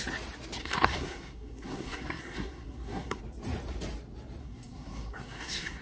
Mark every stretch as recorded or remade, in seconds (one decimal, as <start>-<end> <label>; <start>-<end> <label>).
0.0-0.6 recorded; 0.6-3.2 remade; 3.2-4.4 recorded; 4.4-5.8 remade